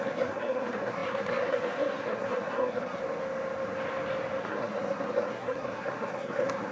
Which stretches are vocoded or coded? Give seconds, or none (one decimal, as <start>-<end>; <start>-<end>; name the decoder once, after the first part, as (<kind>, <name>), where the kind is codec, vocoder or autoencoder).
0.0-3.0 (codec, SNAC); 4.4-6.7